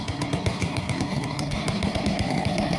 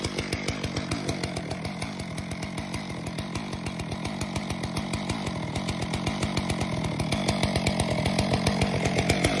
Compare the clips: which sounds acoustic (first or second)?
second